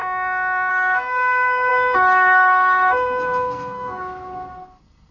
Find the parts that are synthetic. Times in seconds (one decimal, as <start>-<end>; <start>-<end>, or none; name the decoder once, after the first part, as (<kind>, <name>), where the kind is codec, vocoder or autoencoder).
0.7-5.1 (codec, SNAC)